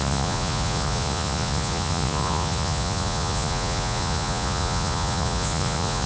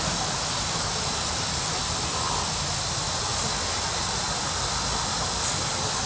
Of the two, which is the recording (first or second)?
second